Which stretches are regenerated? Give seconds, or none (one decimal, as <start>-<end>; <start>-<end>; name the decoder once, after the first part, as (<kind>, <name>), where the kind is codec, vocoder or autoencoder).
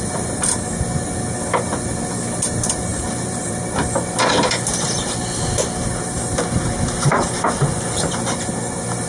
2.9-4.3 (vocoder, BigVGAN v2)